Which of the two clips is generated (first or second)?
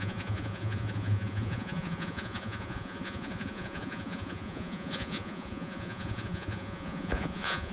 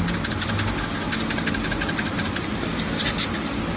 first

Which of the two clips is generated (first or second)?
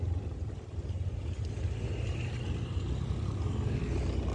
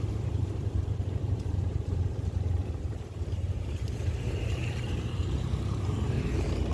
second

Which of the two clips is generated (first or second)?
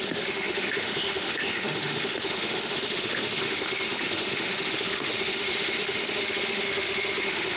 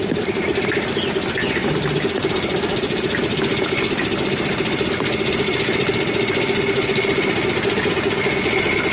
first